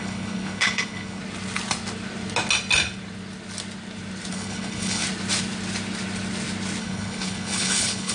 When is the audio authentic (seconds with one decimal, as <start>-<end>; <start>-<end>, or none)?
1.2-4.3; 5.0-6.8